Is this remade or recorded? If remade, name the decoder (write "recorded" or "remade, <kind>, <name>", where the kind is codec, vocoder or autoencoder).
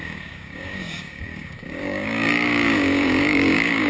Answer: remade, codec, DAC